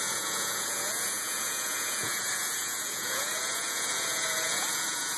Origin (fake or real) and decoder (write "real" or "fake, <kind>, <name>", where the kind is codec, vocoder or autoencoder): fake, vocoder, Vocos